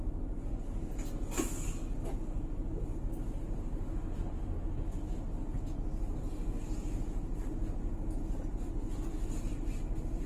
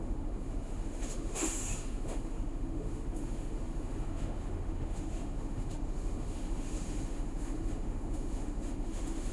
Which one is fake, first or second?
second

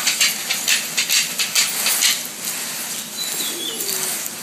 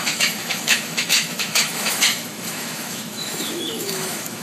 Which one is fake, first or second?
second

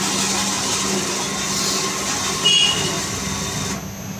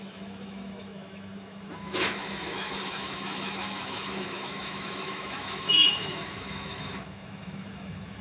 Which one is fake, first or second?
second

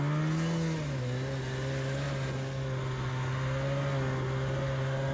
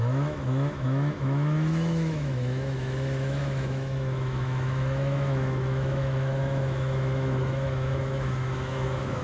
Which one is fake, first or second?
second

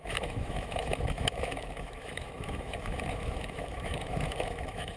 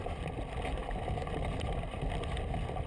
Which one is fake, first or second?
first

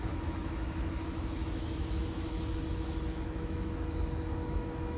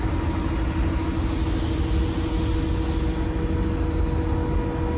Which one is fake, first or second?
first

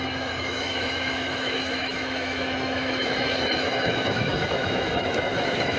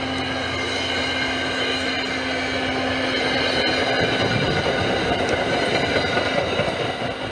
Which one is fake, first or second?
first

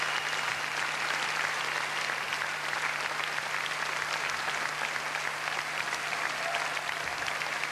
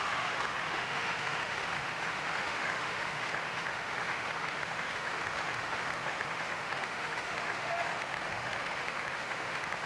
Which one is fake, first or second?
second